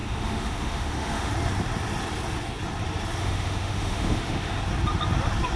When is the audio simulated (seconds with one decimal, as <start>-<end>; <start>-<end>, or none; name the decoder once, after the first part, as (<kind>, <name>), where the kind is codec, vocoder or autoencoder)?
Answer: 0.0-1.3 (autoencoder, DAC-VAE); 3.2-4.6